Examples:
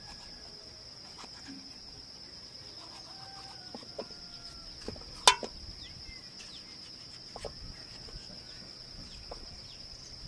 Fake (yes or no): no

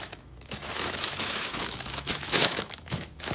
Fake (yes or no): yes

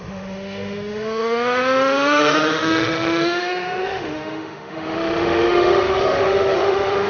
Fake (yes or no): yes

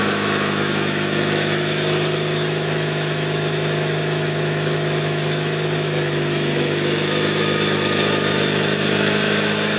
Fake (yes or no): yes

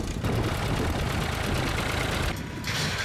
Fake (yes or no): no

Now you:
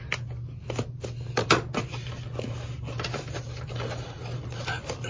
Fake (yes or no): no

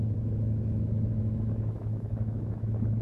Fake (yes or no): yes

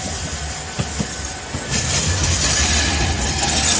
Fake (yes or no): no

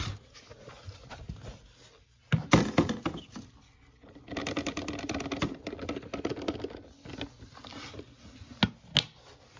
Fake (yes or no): no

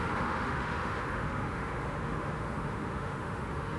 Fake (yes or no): yes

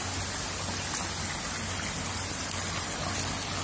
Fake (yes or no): no